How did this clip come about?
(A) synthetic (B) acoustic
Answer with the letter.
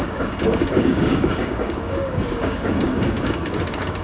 A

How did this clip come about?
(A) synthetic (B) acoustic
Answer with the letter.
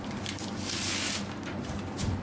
B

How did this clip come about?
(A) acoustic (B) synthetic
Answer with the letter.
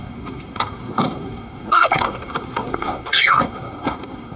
B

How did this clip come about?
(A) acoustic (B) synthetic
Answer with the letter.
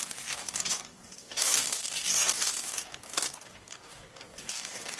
B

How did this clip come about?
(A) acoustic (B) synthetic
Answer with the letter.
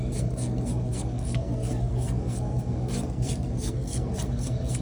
B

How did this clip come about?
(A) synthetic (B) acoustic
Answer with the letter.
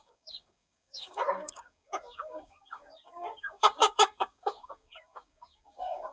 A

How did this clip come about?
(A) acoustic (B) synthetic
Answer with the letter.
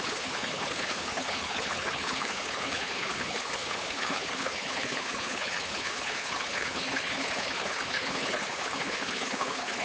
B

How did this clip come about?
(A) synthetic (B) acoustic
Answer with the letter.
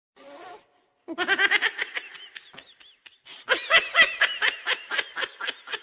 B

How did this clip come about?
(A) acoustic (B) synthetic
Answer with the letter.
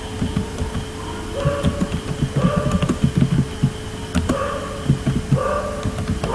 A